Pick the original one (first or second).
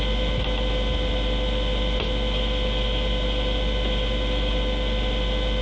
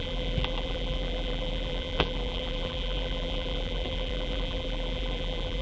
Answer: first